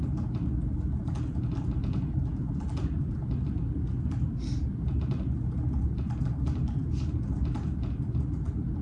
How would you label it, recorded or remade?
recorded